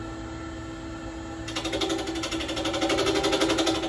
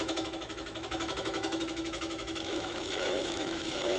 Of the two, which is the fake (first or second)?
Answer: second